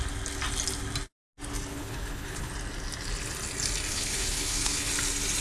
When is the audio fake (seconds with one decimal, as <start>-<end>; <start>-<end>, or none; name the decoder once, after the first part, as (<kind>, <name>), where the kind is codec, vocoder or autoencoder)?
1.7-2.5 (codec, HILCodec); 3.9-4.9

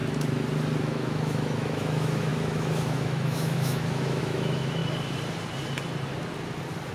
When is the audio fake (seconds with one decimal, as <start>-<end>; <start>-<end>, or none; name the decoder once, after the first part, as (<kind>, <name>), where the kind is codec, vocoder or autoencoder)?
0.8-4.8 (autoencoder, DAC-VAE)

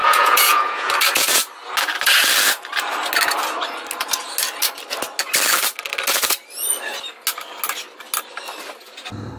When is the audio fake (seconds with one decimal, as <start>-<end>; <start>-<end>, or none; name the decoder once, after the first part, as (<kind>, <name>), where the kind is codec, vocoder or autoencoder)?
0.0-0.9 (vocoder, Vocos)

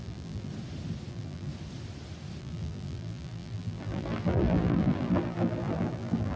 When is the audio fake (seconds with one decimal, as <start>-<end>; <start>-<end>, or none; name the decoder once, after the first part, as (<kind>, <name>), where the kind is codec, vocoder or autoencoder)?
0.0-0.5 (vocoder, BigVGAN v2); 1.1-1.5; 2.4-6.4

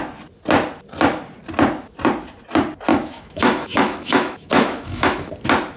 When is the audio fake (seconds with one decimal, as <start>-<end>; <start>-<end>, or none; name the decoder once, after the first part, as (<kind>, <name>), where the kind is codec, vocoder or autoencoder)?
2.9-5.3 (autoencoder, DAC-VAE)

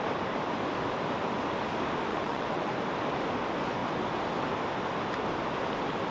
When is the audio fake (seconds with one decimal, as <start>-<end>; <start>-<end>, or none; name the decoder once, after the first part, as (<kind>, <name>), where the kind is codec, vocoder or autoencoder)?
2.1-2.7 (vocoder, WaveNeXt)

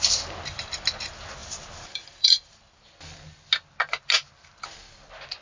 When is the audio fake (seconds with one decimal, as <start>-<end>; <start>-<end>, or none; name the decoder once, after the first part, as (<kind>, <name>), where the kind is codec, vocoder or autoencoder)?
1.4-2.6 (vocoder, BigVGAN v2)